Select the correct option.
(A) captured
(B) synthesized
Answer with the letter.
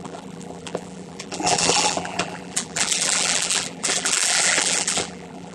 B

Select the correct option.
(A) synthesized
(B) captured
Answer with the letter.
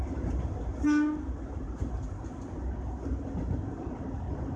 B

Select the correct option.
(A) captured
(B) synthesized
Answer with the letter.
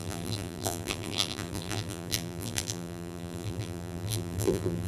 B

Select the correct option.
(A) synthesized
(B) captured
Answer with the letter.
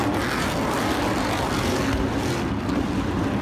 B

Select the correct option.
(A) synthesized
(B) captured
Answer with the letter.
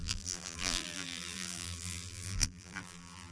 A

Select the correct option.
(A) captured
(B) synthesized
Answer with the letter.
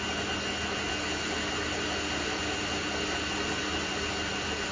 A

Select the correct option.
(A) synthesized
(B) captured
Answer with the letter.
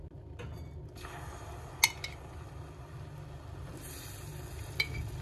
B